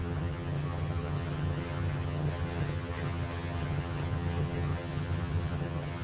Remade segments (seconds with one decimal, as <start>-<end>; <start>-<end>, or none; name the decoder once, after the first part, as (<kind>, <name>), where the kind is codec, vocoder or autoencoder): 0.0-6.0 (vocoder, HiFi-GAN)